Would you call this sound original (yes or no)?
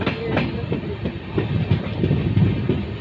yes